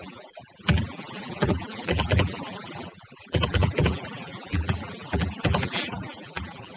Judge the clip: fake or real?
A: fake